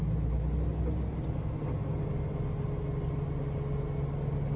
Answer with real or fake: real